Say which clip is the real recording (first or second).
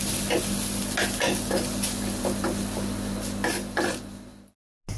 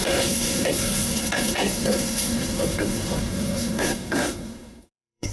first